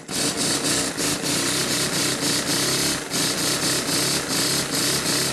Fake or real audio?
real